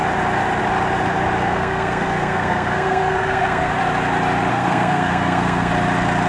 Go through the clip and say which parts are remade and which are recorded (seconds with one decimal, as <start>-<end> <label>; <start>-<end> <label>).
0.0-1.4 recorded; 1.4-3.7 remade; 3.7-4.5 recorded; 4.5-5.7 remade; 5.7-6.3 recorded